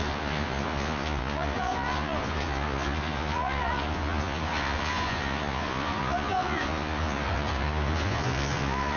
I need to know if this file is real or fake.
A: fake